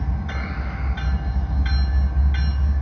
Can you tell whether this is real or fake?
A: real